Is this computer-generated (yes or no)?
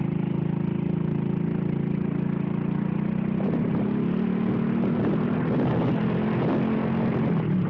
no